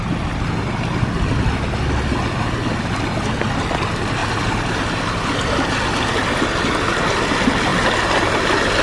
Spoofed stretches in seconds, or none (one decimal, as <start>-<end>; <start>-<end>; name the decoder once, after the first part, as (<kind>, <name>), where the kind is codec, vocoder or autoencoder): none